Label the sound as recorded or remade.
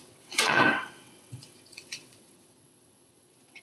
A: remade